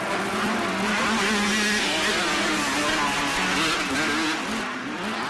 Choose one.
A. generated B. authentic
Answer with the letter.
B